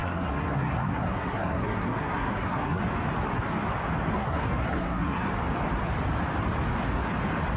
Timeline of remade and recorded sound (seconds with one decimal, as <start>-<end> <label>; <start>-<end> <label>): 0.0-2.8 remade; 2.8-4.1 recorded; 4.1-5.3 remade; 5.3-7.6 recorded

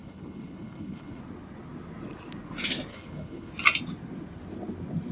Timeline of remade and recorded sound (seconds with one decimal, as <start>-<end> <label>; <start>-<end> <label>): 0.0-1.2 remade; 1.2-2.9 recorded; 2.9-3.5 remade; 3.5-5.1 recorded

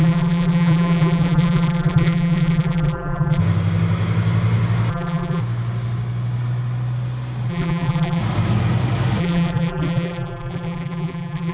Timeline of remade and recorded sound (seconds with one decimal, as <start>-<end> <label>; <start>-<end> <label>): 0.0-3.4 remade; 3.4-4.9 recorded; 4.9-5.4 remade; 5.4-7.5 recorded; 7.5-8.2 remade; 8.2-9.2 recorded; 9.2-11.5 remade

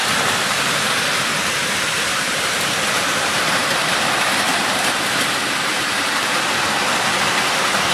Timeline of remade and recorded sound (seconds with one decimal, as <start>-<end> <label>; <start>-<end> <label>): 0.0-7.9 remade